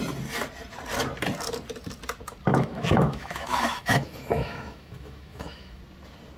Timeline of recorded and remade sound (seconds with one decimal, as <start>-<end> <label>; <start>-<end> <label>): 0.0-2.5 recorded; 2.5-5.8 remade; 5.8-6.4 recorded